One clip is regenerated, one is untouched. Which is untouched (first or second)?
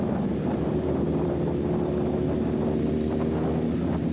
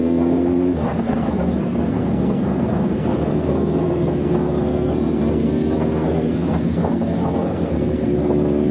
first